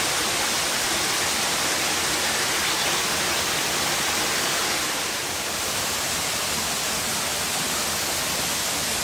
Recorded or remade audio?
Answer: recorded